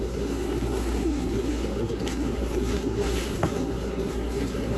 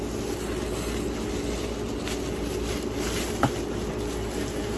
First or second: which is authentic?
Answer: second